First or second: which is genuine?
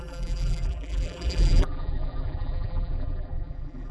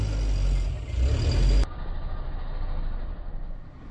second